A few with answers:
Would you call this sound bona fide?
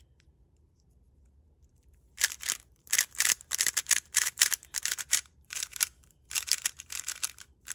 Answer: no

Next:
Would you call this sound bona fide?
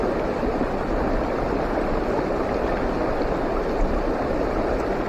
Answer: yes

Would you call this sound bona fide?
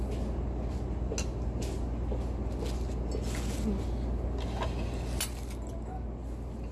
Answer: yes